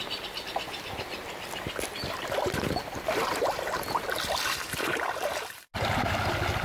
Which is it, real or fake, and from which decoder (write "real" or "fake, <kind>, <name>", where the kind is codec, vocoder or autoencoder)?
real